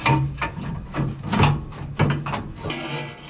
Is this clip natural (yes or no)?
yes